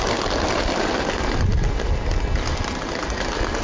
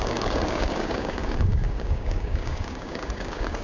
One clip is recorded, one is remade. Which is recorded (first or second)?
first